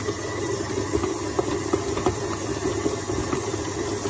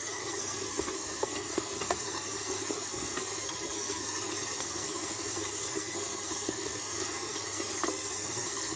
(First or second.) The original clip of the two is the first